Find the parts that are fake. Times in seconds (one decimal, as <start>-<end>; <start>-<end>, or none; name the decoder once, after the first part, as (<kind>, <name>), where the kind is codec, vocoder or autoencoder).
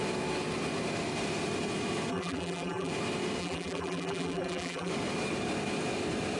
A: 2.1-2.9 (vocoder, BigVGAN v2); 3.4-4.9